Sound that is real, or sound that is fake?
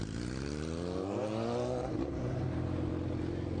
real